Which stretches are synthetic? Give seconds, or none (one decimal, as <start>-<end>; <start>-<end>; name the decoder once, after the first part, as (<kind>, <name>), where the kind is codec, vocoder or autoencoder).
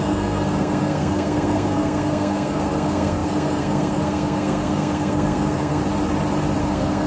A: 0.0-5.8 (codec, SNAC); 6.6-7.1